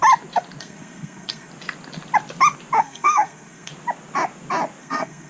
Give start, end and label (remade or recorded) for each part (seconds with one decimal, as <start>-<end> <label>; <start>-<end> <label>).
0.0-0.6 recorded; 0.6-1.5 remade; 1.5-2.8 recorded; 2.8-3.7 remade; 3.7-4.8 recorded; 4.8-5.3 remade